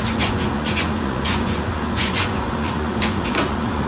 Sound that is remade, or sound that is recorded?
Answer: remade